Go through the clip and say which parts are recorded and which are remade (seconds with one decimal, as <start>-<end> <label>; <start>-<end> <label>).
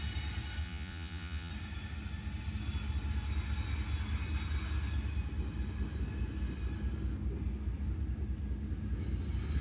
0.0-0.6 recorded; 0.6-1.5 remade; 1.5-9.6 recorded